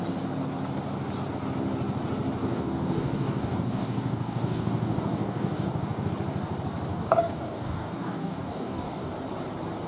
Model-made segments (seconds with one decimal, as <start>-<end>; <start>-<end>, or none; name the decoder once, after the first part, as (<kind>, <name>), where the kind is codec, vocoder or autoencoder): 2.4-6.1 (codec, DAC); 6.9-9.1